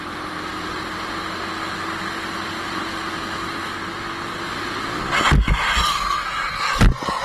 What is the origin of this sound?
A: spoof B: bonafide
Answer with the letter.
B